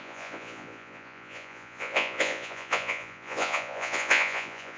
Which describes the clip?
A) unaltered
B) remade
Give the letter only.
B